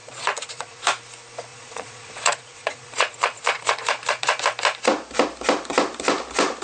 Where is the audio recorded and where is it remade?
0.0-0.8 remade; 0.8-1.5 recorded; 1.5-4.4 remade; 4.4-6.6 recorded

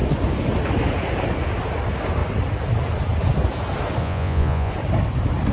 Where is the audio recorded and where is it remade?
0.0-4.0 recorded; 4.0-4.7 remade; 4.7-5.5 recorded